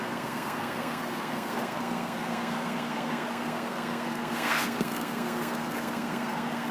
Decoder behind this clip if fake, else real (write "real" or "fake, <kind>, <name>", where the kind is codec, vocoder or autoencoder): fake, codec, SNAC